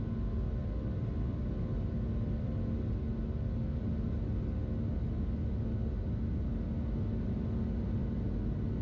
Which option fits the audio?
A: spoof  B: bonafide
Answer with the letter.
B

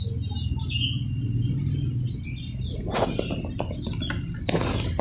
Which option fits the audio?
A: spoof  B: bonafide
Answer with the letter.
B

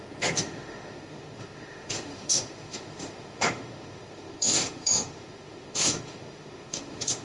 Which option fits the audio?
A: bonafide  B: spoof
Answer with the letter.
B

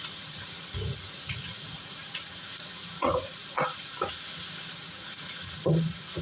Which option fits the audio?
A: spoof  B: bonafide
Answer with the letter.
A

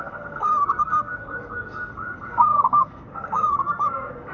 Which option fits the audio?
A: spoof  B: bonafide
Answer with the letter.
A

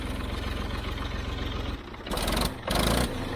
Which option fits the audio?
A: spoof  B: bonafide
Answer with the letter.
B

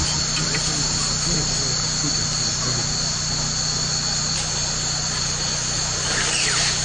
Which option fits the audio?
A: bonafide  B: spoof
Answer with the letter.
A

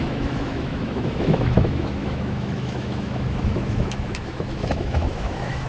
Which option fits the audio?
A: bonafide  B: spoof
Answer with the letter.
B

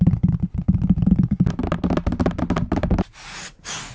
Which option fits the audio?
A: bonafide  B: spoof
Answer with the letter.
A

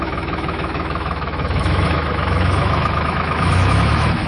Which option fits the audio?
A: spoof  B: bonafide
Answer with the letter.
A